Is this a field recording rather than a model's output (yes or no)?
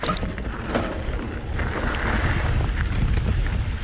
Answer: yes